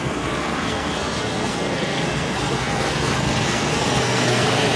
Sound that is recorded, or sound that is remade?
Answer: remade